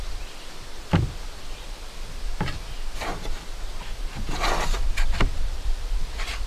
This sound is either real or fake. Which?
real